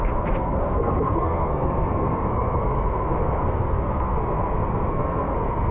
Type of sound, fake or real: fake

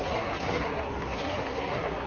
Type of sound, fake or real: fake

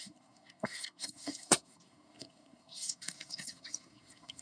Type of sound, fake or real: fake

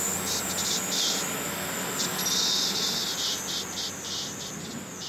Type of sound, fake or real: real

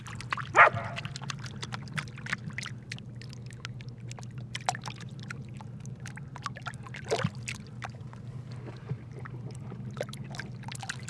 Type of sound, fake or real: real